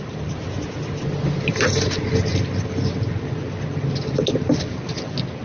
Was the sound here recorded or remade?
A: recorded